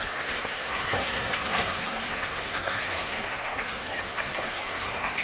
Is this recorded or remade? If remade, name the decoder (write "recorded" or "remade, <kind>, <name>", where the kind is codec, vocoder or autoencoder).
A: remade, codec, SNAC